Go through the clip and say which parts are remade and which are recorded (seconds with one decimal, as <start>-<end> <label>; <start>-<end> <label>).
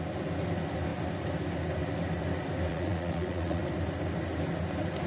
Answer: 0.0-2.7 recorded; 2.7-3.6 remade; 3.6-5.1 recorded